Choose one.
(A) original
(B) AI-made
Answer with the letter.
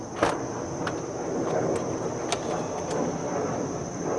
A